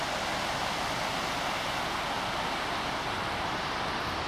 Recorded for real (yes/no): yes